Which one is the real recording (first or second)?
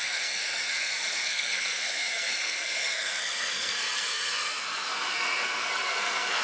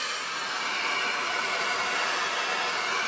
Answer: second